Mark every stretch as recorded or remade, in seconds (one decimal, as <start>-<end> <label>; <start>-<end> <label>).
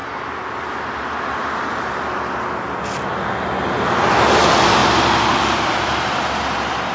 0.0-4.1 recorded; 4.1-4.8 remade; 4.8-5.4 recorded; 5.4-6.9 remade